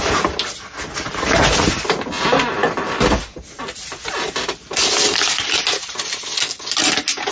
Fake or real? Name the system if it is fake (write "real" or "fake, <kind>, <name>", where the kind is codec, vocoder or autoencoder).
real